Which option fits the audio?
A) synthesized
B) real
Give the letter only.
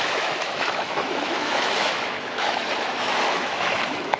A